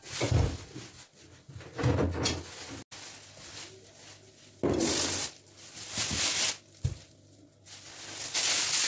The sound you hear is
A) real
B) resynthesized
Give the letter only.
A